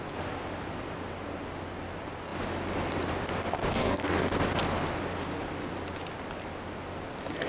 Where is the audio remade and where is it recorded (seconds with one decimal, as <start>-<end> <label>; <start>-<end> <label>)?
0.0-3.7 recorded; 3.7-4.3 remade; 4.3-7.5 recorded